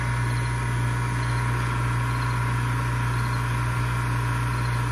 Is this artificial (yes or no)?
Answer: no